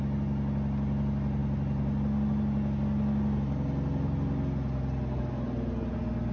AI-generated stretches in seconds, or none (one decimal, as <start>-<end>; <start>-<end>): none